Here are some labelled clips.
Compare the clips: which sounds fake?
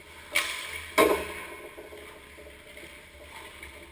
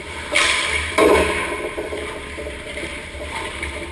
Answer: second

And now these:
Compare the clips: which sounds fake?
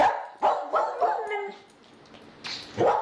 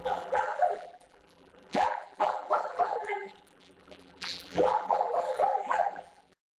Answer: second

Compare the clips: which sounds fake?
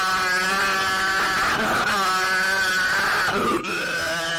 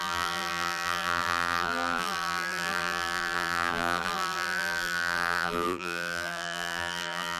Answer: second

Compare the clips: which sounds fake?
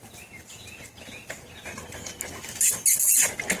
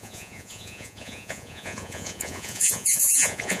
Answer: second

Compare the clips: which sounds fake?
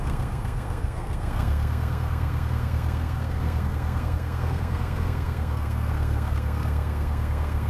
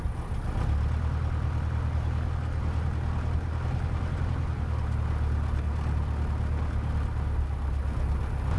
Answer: first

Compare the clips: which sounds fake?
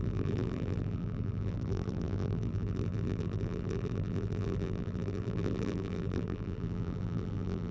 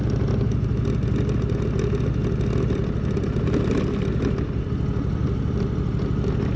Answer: first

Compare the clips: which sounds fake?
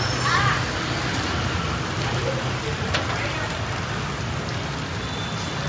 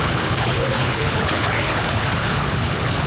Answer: second